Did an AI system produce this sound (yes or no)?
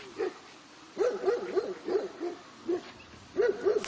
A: no